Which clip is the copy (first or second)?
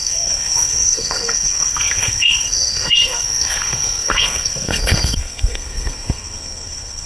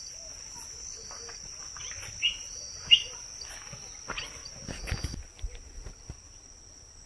first